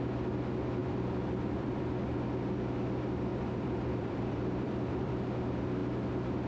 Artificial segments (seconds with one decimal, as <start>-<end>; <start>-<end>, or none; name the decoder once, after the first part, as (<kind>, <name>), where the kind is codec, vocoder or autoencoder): 0.8-1.8 (vocoder, BigVGAN v2); 3.3-5.1